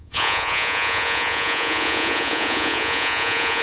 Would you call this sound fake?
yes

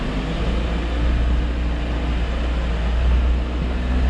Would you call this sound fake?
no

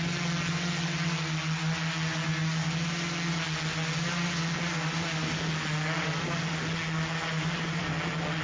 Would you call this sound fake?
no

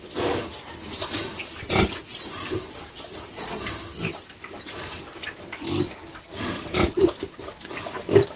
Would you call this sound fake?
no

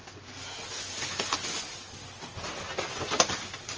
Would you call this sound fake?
no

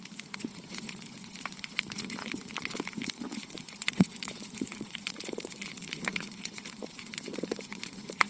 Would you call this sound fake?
yes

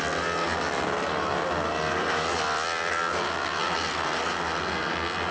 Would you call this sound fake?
no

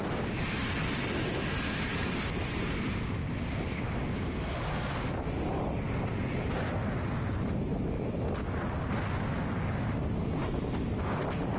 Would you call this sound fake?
no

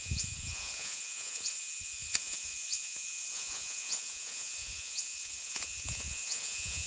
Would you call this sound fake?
yes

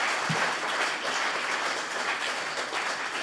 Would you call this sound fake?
no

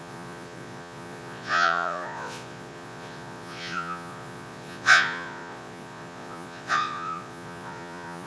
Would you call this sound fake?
yes